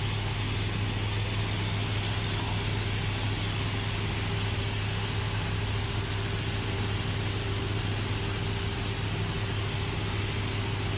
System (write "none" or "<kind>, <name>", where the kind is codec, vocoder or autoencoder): none